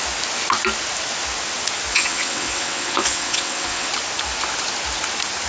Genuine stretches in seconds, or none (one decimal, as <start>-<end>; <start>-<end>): 0.0-1.9; 3.9-5.5